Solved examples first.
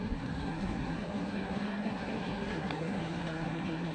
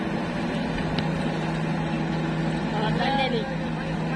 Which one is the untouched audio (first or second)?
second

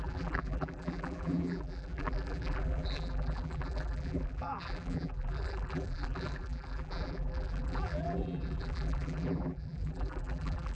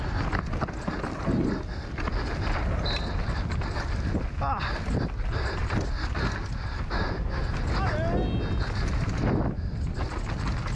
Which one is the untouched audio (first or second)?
second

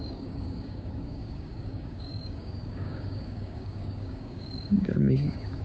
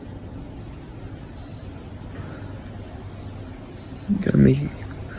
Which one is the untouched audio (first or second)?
second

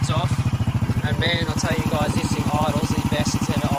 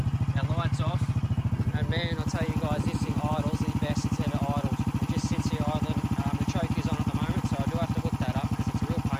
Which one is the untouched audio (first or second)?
second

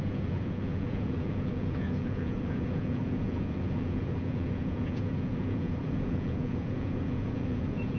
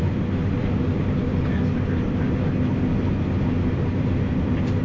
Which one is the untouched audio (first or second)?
second